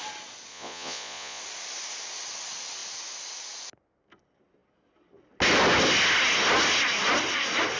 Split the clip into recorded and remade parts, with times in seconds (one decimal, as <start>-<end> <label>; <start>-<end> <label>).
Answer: 0.0-0.5 recorded; 0.5-1.4 remade; 1.4-7.8 recorded